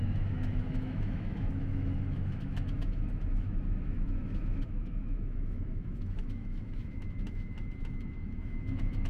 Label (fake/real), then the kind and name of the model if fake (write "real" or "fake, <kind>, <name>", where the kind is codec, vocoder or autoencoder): fake, autoencoder, DAC-VAE